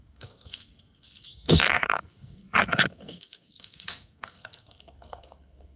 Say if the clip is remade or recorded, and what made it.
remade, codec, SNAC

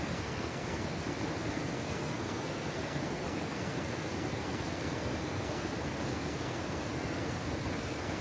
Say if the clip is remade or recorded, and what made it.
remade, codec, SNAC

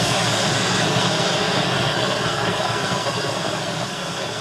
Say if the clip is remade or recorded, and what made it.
remade, codec, SNAC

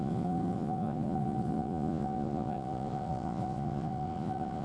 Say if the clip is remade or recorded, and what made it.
remade, vocoder, Vocos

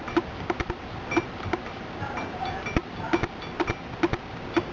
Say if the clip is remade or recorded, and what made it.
recorded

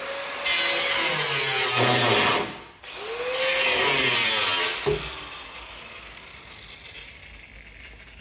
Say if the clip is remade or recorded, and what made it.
recorded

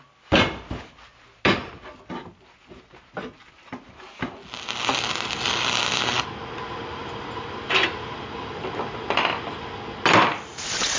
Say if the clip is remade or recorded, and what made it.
recorded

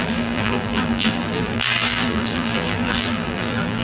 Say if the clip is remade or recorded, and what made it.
remade, vocoder, BigVGAN v2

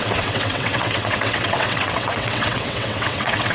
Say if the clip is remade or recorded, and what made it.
remade, vocoder, WaveNeXt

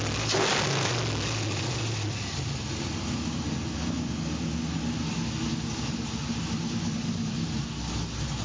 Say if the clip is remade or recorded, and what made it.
recorded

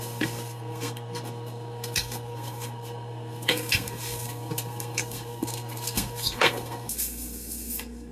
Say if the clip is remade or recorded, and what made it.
remade, codec, SNAC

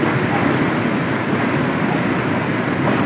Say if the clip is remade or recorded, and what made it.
recorded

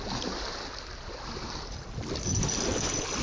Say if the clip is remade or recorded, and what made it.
recorded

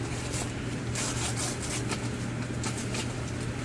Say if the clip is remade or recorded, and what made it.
recorded